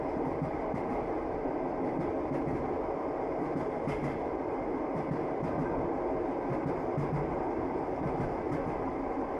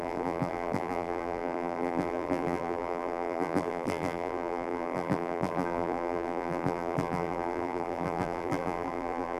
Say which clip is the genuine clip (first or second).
first